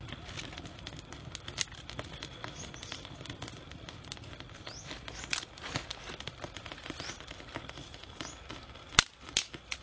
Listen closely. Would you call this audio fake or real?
real